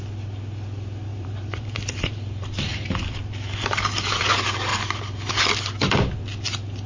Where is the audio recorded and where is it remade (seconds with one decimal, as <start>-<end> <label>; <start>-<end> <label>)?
0.0-1.1 recorded; 1.1-4.2 remade; 4.2-4.7 recorded; 4.7-5.3 remade; 5.3-6.9 recorded